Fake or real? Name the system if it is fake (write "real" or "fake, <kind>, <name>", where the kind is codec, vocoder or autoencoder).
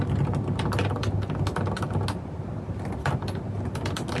real